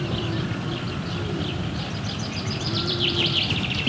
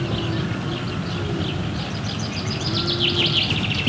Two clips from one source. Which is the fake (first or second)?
first